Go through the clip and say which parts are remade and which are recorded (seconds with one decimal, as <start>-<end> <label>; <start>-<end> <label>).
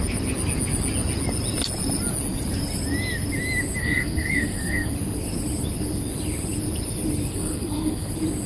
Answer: 0.0-3.8 recorded; 3.8-4.9 remade; 4.9-7.3 recorded; 7.3-8.1 remade; 8.1-8.5 recorded